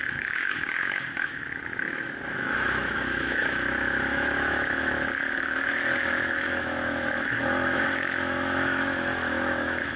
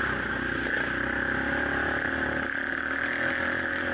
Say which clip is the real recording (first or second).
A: second